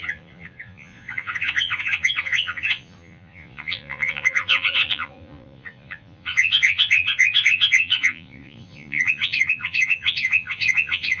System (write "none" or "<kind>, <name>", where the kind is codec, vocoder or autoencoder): vocoder, Vocos